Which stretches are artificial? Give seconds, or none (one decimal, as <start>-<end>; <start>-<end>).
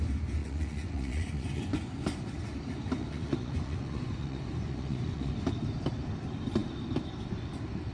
0.4-1.9; 3.0-5.3